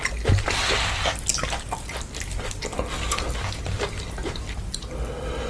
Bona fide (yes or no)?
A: yes